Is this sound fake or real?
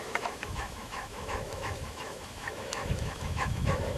fake